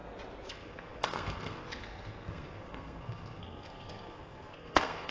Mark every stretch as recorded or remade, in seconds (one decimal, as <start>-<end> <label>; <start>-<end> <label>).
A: 0.0-0.5 recorded; 0.5-5.1 remade